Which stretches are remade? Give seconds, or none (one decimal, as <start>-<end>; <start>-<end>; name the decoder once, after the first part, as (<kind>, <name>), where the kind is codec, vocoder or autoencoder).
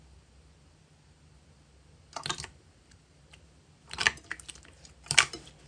none